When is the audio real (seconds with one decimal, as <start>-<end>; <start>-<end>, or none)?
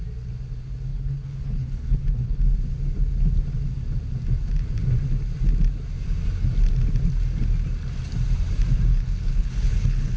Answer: 0.0-0.9; 2.4-8.9